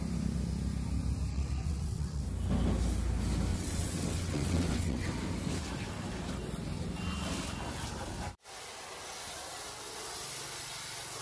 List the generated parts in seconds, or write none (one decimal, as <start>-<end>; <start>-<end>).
1.3-2.2; 3.5-5.1